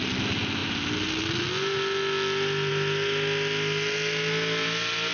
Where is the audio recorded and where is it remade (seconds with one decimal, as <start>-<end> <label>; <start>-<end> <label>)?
0.0-5.1 recorded